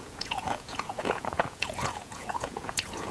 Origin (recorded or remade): remade